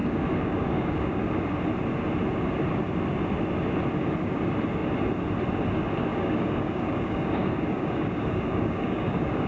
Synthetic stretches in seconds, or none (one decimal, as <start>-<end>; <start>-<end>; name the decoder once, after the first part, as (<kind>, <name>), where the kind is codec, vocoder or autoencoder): 0.0-1.2 (codec, DAC); 6.1-9.5